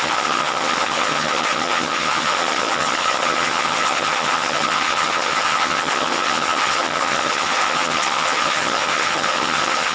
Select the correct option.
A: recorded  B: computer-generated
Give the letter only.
B